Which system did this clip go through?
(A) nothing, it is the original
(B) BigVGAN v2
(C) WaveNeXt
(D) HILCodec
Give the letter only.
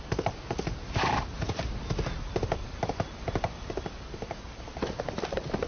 A